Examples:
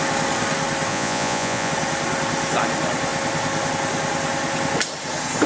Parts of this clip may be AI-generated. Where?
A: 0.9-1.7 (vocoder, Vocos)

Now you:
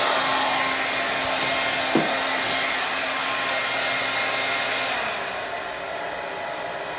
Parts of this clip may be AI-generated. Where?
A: none

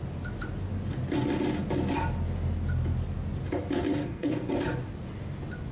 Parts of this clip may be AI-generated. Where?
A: 4.0-4.5 (codec, SNAC)

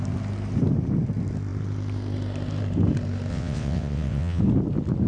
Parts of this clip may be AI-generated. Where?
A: 3.3-4.4 (vocoder, WaveNeXt)

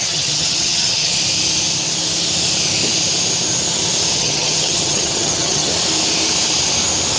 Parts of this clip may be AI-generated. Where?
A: 0.0-1.1 (vocoder, HiFi-GAN); 4.1-5.7